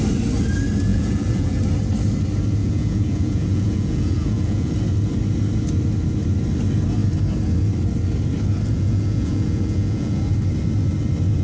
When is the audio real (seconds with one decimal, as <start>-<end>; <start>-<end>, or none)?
0.0-0.9; 1.6-2.6; 4.7-8.7; 10.2-11.4